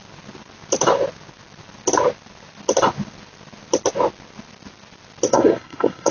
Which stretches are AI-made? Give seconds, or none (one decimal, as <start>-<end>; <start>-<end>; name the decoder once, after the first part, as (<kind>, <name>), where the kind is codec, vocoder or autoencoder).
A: 5.3-6.1 (codec, SNAC)